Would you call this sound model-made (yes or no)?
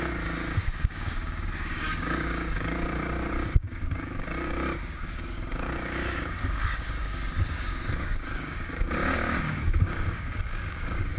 yes